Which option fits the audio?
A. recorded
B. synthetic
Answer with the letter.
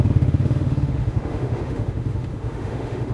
B